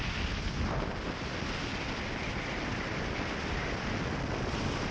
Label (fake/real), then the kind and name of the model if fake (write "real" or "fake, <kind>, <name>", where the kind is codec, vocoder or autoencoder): real